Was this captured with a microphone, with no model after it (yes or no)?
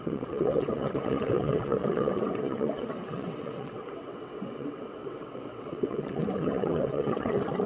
no